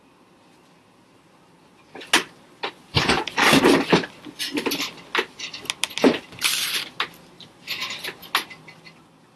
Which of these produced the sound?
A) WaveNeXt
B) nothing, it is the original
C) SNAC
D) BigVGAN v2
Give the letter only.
B